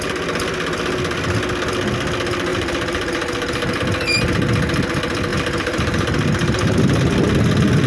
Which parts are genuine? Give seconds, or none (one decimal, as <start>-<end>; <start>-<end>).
0.0-2.5; 3.8-5.3; 6.8-7.9